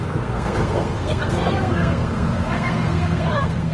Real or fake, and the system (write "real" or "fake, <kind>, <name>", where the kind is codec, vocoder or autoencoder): fake, codec, SNAC